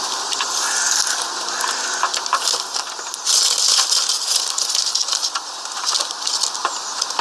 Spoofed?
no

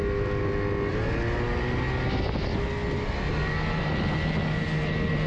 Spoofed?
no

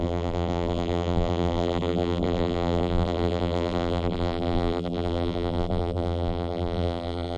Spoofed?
yes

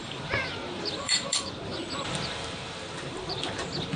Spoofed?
yes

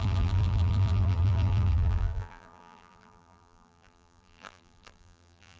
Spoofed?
yes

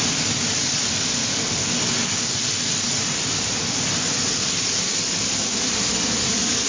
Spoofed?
yes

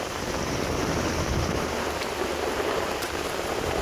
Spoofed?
yes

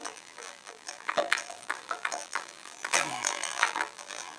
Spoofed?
yes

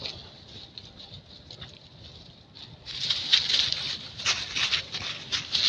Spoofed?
no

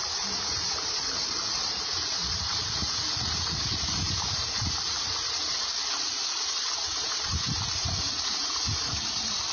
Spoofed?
yes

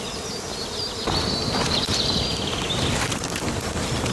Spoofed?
no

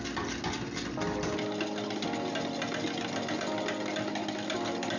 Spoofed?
no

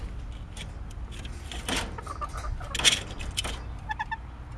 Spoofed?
no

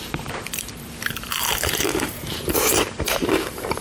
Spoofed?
yes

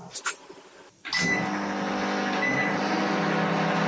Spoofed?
no